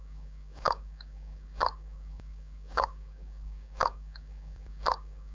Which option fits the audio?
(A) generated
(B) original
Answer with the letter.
A